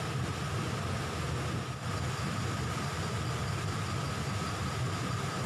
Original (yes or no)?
yes